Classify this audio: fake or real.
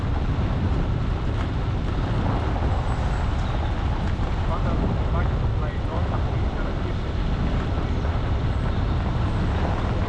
real